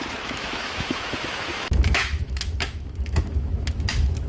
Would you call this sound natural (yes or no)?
no